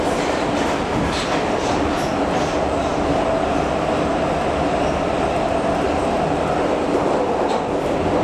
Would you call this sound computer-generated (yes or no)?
no